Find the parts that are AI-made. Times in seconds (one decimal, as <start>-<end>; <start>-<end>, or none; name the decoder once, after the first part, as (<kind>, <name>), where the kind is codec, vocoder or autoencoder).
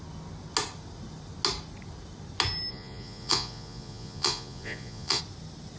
2.7-5.2 (vocoder, Vocos)